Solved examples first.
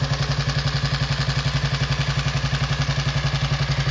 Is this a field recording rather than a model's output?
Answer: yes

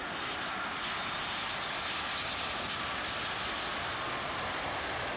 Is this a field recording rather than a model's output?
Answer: yes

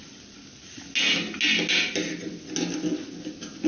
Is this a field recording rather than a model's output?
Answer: yes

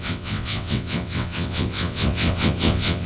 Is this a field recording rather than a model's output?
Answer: no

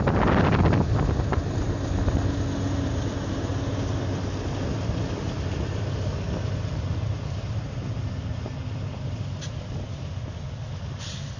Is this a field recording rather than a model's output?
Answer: yes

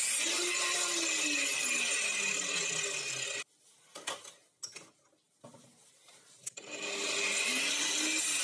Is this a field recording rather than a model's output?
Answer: yes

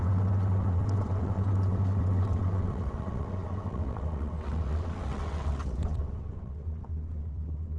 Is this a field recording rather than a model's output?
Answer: no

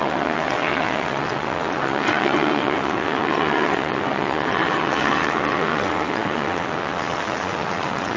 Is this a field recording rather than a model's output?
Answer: no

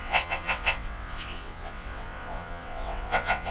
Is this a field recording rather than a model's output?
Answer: no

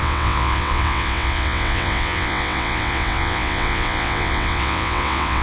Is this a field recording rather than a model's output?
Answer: no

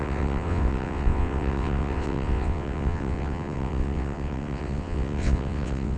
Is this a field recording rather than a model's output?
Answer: no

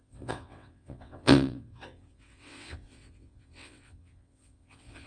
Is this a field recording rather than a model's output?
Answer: no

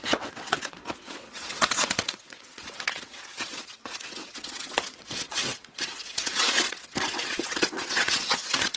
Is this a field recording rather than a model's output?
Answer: no